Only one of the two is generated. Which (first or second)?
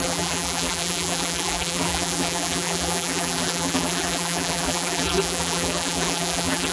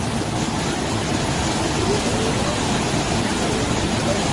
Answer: first